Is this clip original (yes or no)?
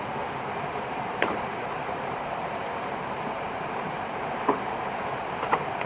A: no